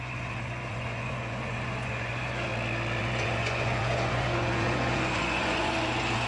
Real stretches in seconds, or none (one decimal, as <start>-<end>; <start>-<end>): 2.5-3.0